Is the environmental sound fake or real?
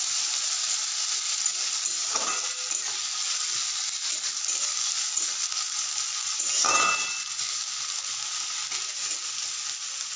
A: real